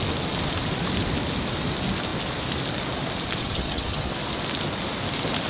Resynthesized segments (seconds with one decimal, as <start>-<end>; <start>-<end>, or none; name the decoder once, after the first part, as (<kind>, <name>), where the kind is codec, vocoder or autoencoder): 3.4-4.1 (vocoder, HiFi-GAN)